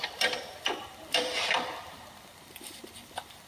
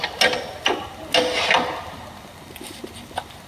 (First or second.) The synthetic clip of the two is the first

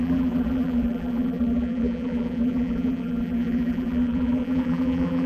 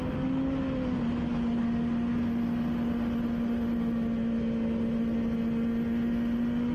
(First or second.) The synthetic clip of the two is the first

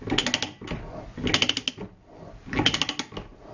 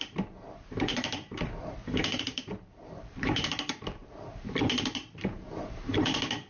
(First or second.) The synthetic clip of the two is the second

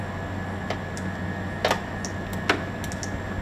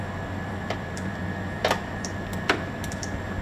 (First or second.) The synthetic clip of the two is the second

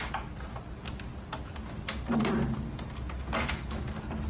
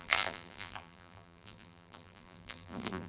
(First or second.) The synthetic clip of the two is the second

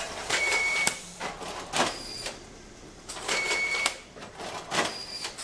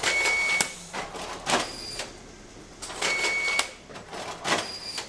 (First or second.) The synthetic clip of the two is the first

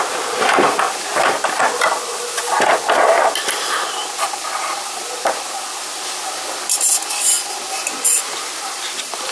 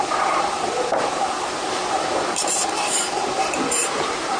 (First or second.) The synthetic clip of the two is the second